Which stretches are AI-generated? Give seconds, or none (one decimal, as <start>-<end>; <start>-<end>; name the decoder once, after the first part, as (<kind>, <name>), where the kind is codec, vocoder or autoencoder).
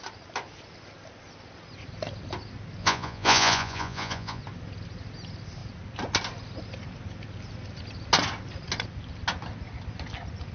2.8-4.4 (vocoder, Vocos)